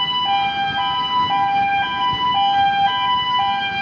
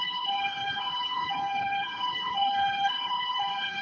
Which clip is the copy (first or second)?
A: second